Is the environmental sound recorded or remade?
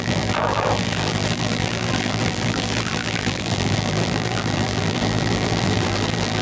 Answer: remade